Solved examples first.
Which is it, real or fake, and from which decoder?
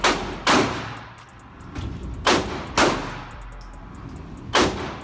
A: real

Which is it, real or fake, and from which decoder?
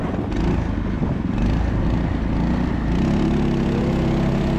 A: real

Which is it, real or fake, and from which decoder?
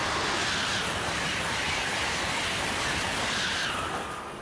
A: real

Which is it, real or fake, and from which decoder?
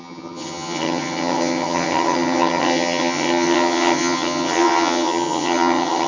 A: fake, vocoder, HiFi-GAN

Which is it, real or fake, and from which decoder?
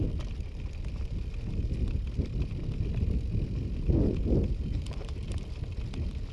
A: real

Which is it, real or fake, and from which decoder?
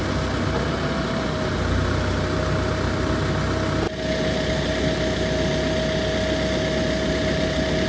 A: real